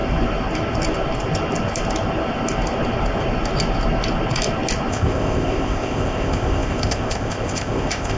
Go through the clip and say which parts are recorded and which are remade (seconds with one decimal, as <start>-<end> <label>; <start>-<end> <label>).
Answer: 0.0-4.9 recorded; 4.9-8.2 remade